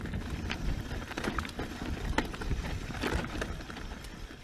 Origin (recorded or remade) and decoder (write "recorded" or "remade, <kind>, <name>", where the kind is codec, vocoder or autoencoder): recorded